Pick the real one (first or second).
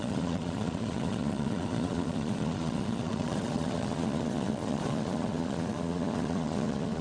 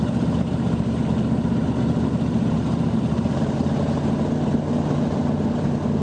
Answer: second